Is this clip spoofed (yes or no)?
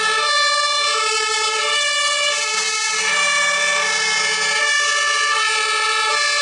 no